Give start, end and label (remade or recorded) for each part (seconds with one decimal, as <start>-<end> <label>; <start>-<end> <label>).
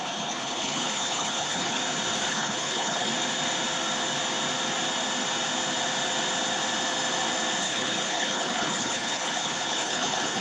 0.0-1.8 remade; 1.8-2.3 recorded; 2.3-3.1 remade; 3.1-7.6 recorded; 7.6-10.4 remade